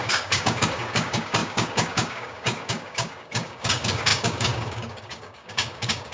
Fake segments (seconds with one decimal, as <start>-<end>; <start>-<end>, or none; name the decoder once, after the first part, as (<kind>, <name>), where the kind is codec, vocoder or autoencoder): 0.0-6.1 (codec, DAC)